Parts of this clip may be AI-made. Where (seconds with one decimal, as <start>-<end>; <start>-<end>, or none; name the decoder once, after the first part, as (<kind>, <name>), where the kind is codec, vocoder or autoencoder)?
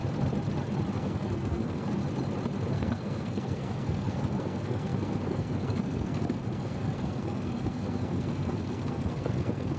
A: 0.9-2.0 (codec, SNAC); 2.7-9.8